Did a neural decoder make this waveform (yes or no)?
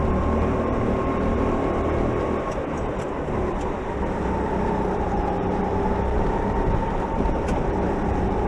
no